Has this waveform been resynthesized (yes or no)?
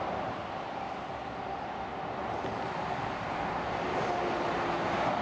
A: no